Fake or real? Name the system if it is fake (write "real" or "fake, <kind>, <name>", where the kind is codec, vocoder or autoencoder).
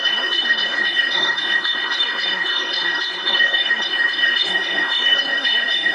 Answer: fake, codec, SNAC